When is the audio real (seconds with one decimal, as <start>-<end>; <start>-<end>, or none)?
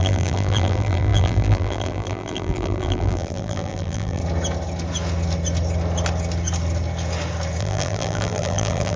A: 4.2-7.6